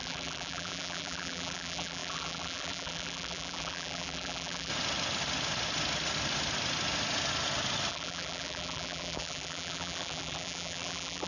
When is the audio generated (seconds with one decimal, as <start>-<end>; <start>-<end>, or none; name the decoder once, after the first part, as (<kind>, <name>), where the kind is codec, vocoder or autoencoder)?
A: 0.0-4.7 (vocoder, BigVGAN v2); 7.9-11.3

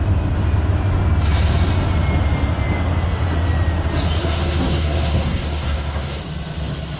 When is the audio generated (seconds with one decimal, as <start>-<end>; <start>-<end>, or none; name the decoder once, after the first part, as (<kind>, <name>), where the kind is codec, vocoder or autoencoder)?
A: 4.2-6.2 (codec, SNAC)